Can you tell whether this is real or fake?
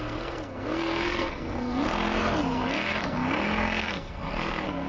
fake